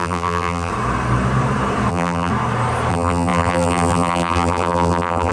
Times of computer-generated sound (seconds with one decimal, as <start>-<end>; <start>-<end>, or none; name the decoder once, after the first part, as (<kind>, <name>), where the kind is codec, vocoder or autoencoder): 0.0-0.7 (vocoder, BigVGAN v2); 1.9-2.3; 2.9-5.3